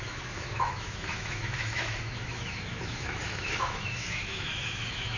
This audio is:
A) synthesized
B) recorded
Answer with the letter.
A